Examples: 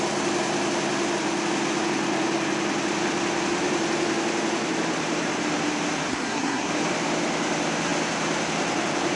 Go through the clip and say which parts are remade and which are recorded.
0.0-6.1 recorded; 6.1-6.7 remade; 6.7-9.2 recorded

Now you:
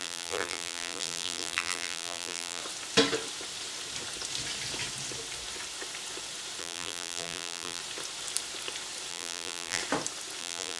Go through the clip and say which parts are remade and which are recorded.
0.0-2.6 remade; 2.6-6.6 recorded; 6.6-7.8 remade; 7.8-9.1 recorded; 9.1-9.8 remade; 9.8-10.4 recorded; 10.4-10.8 remade

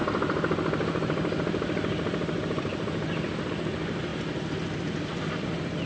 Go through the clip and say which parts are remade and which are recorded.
0.0-5.9 recorded

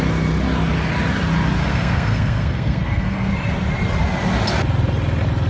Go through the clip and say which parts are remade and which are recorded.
0.0-1.6 recorded; 1.6-3.3 remade; 3.3-5.5 recorded

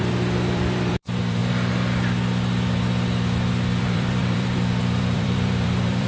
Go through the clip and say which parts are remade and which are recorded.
0.0-1.4 remade; 1.4-3.8 recorded; 3.8-6.1 remade

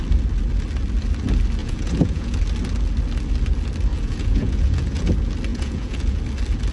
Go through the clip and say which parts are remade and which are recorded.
0.0-1.6 recorded; 1.6-2.4 remade; 2.4-3.9 recorded; 3.9-5.1 remade; 5.1-5.5 recorded; 5.5-6.2 remade; 6.2-6.7 recorded

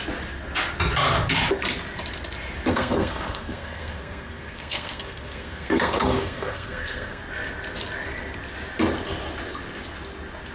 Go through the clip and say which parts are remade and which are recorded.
0.0-2.7 recorded; 2.7-7.2 remade; 7.2-10.5 recorded